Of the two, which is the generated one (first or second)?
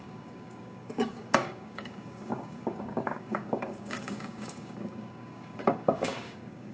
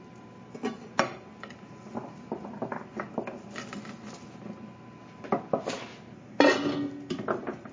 first